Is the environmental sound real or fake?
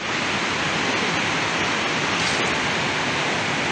real